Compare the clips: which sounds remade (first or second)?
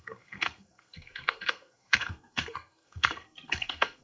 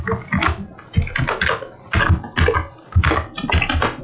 first